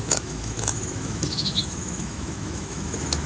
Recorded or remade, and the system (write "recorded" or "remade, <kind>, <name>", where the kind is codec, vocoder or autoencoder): remade, autoencoder, DAC-VAE